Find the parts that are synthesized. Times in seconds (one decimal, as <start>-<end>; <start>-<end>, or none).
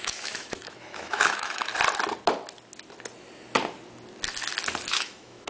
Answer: 0.0-1.7; 4.9-5.5